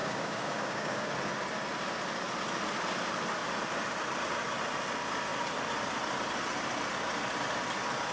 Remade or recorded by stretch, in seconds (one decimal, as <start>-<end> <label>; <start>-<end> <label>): 0.0-1.1 remade; 1.1-8.1 recorded